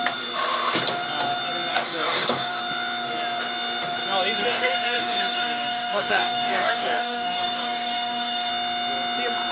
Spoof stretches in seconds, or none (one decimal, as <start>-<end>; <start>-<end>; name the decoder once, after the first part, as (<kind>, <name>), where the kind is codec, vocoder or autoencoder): 1.7-2.6 (codec, DAC); 4.4-8.5